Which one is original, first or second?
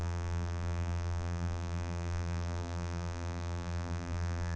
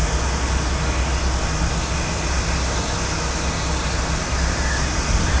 second